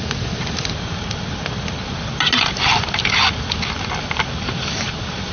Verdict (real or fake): real